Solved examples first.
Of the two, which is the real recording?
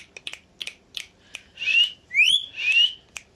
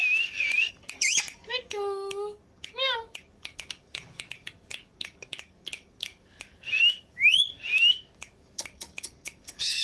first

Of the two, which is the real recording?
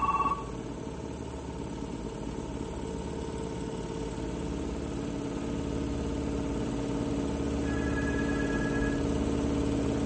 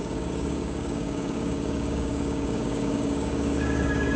first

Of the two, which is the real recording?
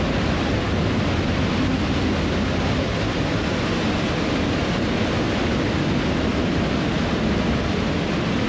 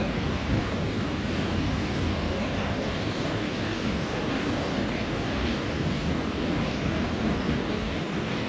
first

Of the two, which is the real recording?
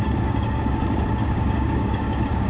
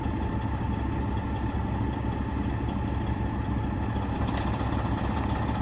second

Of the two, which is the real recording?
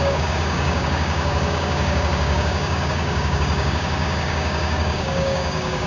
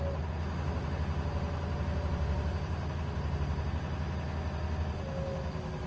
second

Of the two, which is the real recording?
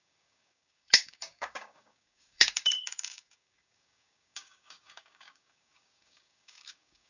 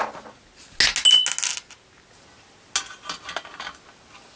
second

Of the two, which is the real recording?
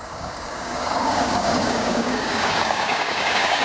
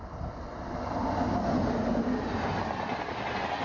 second